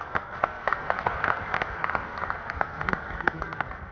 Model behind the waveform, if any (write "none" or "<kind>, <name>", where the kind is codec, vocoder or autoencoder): codec, SNAC